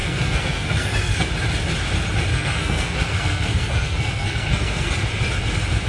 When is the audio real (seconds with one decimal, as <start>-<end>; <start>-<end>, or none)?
1.3-2.3; 4.9-5.9